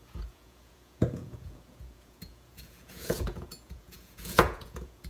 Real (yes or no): no